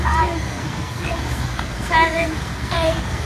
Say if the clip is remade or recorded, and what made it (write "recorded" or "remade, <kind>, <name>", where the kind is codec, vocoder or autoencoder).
remade, codec, SNAC